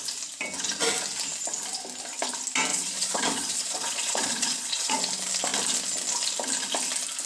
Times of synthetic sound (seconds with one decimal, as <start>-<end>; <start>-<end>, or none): 2.7-5.0